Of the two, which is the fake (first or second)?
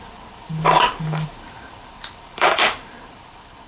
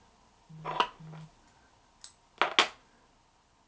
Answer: first